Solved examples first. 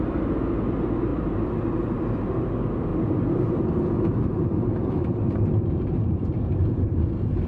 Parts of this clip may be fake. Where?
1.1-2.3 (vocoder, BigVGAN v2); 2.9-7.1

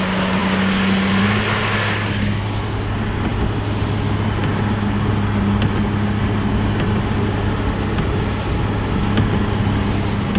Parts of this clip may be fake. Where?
none

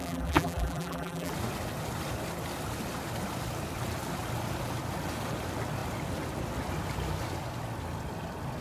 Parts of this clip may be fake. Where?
0.0-1.3 (vocoder, BigVGAN v2)

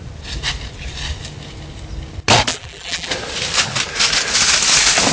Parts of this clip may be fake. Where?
2.5-3.1 (vocoder, BigVGAN v2)